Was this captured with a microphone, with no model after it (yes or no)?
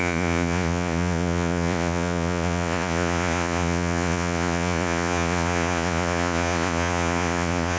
no